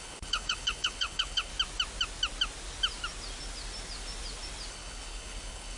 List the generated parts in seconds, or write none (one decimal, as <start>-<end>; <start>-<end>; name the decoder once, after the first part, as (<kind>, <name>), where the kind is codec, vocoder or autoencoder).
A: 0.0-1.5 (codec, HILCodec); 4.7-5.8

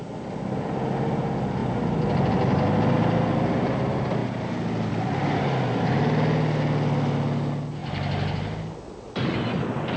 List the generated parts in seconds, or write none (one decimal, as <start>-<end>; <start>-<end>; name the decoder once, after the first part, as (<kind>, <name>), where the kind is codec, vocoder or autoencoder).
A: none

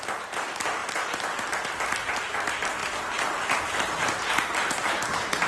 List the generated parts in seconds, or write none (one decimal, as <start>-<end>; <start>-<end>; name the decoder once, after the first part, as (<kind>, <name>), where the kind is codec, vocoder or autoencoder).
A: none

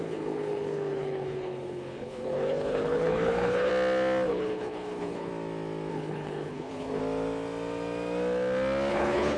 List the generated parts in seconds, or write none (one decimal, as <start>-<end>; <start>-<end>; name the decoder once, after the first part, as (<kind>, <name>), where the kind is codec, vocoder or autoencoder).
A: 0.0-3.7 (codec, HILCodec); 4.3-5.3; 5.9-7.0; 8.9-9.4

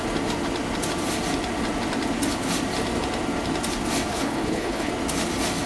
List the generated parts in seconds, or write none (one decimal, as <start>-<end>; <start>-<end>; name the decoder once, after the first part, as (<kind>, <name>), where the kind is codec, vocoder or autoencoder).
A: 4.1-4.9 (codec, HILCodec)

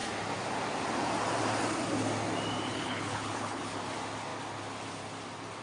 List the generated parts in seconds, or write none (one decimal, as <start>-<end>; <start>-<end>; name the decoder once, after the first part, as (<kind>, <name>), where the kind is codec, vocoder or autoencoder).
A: 2.7-3.8 (codec, HILCodec)

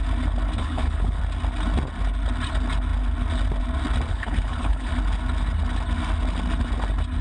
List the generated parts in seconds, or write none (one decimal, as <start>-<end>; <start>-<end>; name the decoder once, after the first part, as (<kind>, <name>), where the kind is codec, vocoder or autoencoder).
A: 0.6-1.2 (codec, HILCodec); 4.1-4.9